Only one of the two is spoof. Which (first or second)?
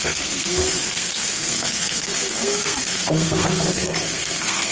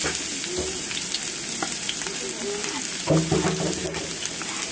first